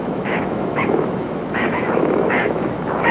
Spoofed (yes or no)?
yes